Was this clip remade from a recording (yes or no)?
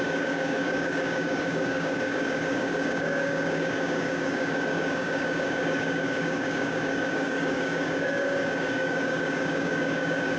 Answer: yes